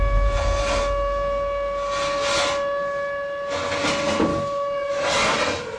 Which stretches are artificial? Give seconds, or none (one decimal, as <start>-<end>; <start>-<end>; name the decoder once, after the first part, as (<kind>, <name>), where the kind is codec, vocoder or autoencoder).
4.3-4.9 (codec, DAC)